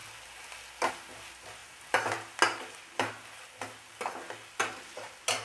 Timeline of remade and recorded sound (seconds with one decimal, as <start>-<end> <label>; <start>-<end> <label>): 0.0-5.4 recorded